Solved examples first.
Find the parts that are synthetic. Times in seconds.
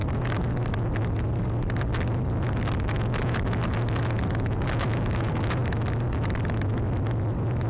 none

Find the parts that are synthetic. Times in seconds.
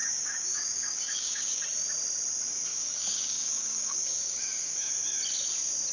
0.0-1.6 (codec, DAC); 2.7-4.9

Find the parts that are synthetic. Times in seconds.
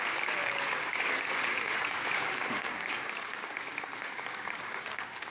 0.0-5.3 (codec, DAC)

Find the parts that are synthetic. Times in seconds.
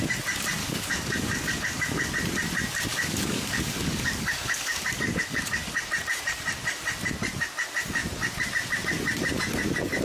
0.6-2.1 (codec, DAC); 2.9-5.8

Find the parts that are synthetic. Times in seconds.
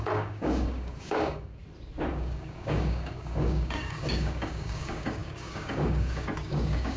0.0-1.6 (codec, DAC); 2.1-7.0